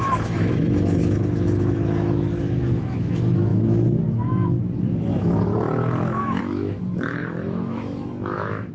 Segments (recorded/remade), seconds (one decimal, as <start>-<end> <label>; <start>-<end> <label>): 0.0-8.7 remade